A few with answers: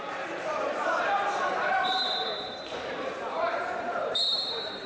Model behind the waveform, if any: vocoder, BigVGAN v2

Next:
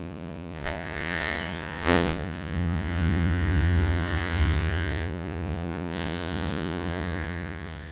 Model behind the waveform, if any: vocoder, Vocos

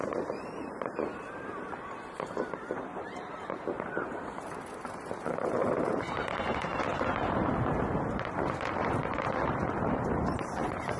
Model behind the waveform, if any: vocoder, BigVGAN v2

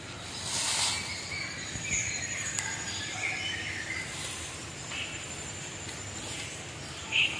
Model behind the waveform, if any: none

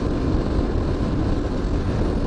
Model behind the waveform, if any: none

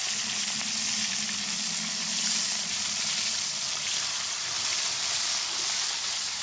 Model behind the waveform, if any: none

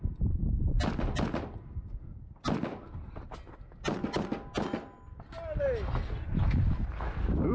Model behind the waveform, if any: none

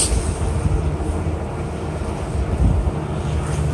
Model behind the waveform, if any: none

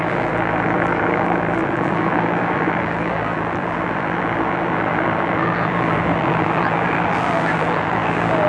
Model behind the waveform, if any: vocoder, BigVGAN v2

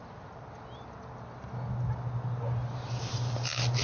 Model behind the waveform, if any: none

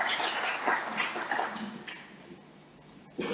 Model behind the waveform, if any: none